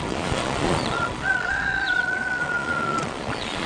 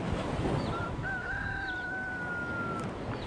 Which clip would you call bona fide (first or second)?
second